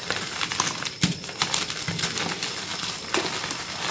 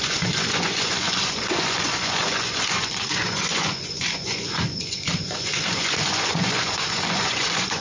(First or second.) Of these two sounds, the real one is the first